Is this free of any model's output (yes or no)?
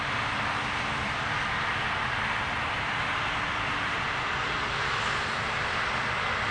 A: yes